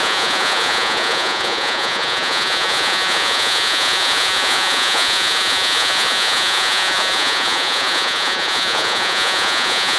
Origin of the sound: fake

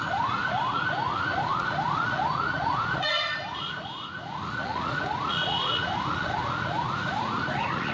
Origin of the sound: fake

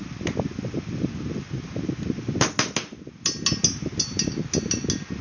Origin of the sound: real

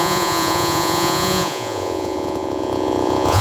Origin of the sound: fake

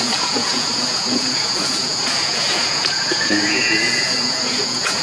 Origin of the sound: fake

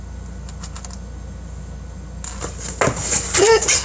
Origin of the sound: real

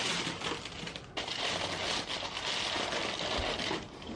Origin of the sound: real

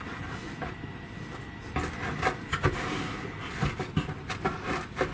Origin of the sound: real